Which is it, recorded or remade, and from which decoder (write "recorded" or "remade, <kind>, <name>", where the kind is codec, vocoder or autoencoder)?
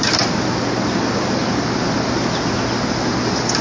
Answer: recorded